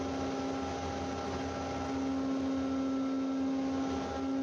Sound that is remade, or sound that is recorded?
recorded